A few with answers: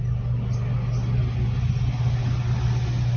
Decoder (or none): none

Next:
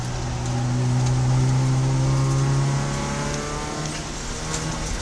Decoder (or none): none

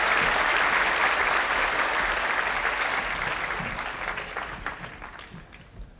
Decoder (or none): none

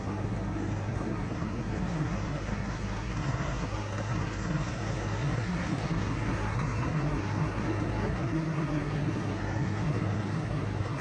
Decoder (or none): codec, SNAC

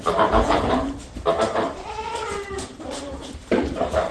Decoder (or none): vocoder, BigVGAN v2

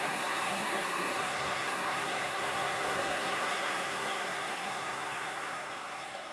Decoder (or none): codec, SNAC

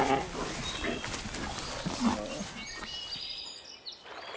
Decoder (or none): none